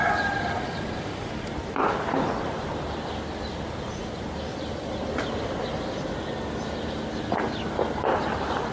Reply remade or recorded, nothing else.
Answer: recorded